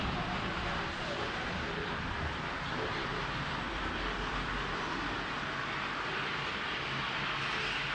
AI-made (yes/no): yes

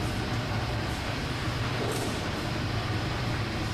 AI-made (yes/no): yes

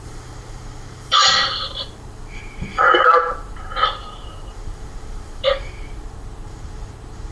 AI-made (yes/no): yes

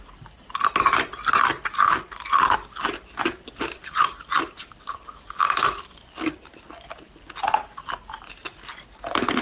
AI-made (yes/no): no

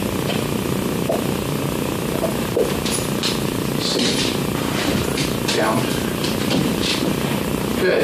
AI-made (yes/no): yes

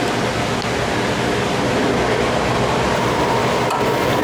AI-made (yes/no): no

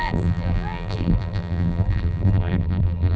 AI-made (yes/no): yes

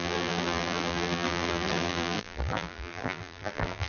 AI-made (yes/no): yes